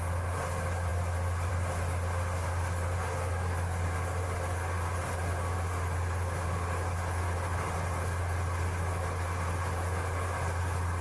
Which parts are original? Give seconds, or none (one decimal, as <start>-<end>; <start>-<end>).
0.0-11.0